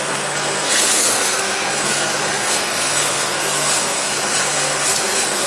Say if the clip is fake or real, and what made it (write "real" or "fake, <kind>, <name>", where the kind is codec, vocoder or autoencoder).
fake, codec, SNAC